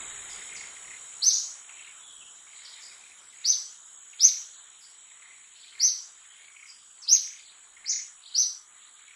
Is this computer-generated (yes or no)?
no